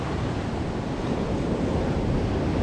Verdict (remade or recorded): recorded